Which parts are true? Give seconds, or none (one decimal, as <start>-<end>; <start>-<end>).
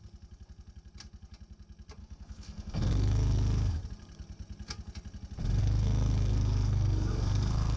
0.0-2.0; 3.8-5.6